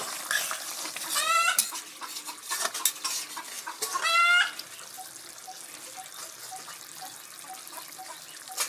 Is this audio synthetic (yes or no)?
no